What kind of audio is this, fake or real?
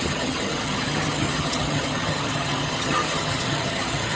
fake